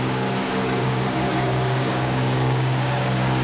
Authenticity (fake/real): fake